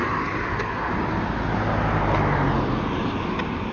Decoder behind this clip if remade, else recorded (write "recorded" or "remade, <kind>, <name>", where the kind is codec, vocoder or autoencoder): recorded